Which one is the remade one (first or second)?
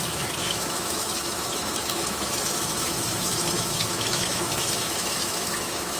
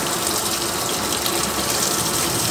first